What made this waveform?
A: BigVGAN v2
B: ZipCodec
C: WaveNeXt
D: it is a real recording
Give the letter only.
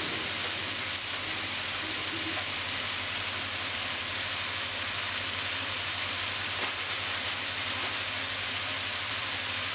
A